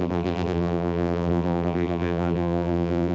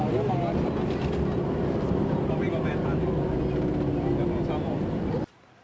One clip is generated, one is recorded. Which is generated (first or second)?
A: first